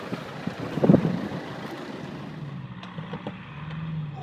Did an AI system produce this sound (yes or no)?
no